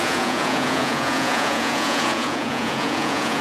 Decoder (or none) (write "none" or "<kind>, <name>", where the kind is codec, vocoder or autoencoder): vocoder, Vocos